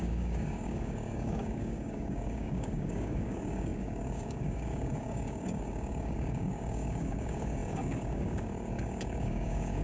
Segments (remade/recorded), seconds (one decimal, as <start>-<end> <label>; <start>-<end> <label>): 0.0-9.8 remade